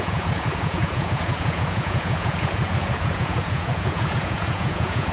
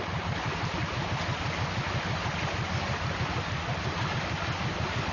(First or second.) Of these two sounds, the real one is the second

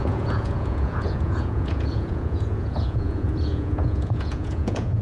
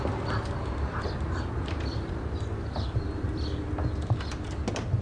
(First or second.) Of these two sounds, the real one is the second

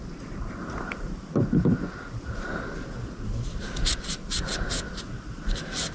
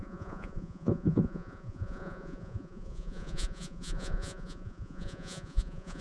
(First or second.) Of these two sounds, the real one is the first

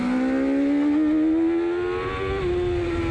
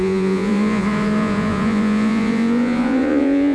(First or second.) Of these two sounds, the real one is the first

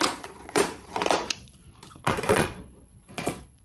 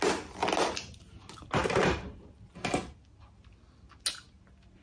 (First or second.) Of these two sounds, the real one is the second